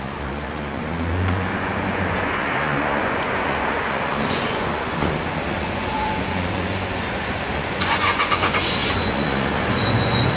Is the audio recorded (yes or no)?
no